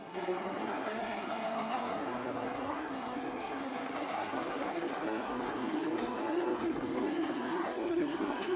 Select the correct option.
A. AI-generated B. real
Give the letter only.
A